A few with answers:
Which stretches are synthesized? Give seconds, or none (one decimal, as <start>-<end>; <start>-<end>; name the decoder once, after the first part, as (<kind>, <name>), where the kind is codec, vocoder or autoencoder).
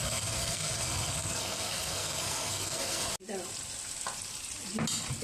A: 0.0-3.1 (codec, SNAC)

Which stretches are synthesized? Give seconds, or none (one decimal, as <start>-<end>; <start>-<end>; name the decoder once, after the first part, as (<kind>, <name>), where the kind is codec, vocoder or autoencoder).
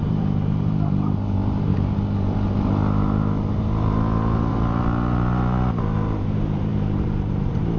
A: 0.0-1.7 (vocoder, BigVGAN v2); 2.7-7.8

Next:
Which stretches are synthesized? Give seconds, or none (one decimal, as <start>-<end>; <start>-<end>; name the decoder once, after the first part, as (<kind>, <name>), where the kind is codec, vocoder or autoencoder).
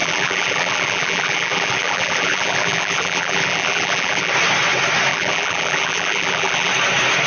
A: 0.0-4.3 (vocoder, BigVGAN v2); 5.1-6.7